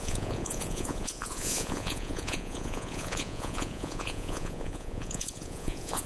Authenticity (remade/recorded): remade